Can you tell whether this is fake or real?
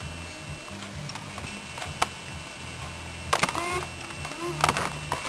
real